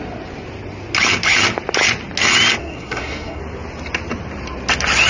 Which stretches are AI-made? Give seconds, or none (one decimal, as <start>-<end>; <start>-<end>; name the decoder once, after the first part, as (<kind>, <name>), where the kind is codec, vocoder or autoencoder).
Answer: 2.6-3.4 (codec, SNAC)